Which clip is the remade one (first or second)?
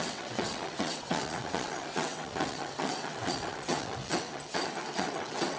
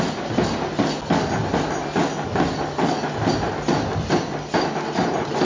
first